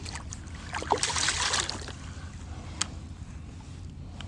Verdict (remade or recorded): recorded